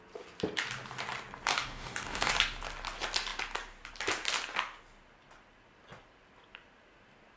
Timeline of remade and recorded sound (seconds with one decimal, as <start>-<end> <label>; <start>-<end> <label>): 0.0-1.5 recorded; 1.5-2.3 remade; 2.3-7.4 recorded

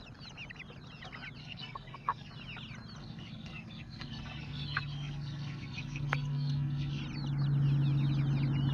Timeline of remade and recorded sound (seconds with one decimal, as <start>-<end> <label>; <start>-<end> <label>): 0.0-1.4 recorded; 1.4-2.3 remade; 2.3-3.0 recorded; 3.0-7.0 remade; 7.0-8.7 recorded

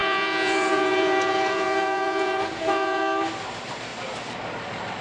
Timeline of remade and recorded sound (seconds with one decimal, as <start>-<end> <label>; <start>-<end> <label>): 0.0-3.0 remade; 3.0-5.0 recorded

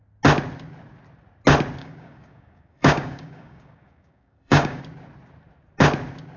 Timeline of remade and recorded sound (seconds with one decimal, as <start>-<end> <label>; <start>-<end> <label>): 0.0-1.8 recorded; 1.8-4.8 remade; 4.8-6.4 recorded

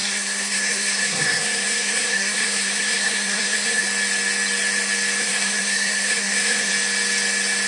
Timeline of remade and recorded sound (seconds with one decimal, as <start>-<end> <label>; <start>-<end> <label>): 0.0-3.8 remade; 3.8-5.2 recorded; 5.2-6.7 remade; 6.7-7.7 recorded

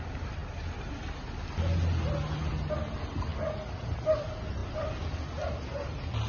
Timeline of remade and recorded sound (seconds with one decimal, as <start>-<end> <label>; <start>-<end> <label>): 0.0-6.3 recorded

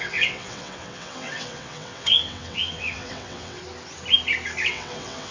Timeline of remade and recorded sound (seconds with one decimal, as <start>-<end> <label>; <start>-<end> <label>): 0.0-3.6 remade; 3.6-4.7 recorded; 4.7-5.3 remade